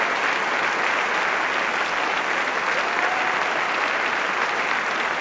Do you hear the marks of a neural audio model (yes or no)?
no